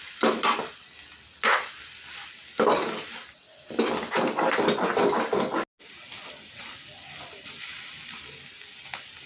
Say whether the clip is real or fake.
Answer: real